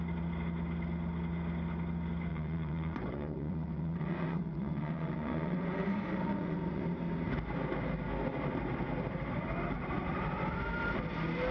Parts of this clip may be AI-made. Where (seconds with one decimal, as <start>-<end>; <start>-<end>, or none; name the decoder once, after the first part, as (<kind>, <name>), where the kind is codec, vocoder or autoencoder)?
2.3-6.8 (vocoder, Vocos)